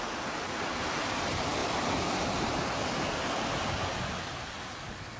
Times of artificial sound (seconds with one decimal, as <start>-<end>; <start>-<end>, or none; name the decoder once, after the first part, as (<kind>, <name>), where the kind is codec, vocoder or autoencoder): none